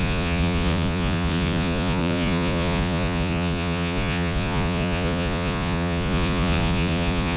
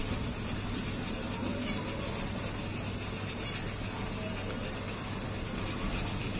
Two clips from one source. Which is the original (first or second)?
second